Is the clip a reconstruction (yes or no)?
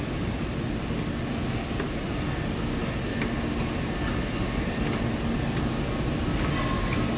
no